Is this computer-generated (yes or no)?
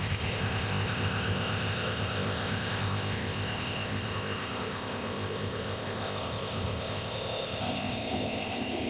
yes